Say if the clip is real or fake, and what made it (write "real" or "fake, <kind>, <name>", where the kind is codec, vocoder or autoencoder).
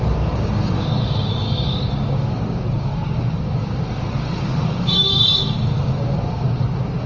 fake, codec, DAC